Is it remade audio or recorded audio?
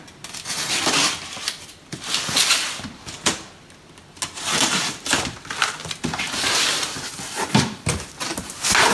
recorded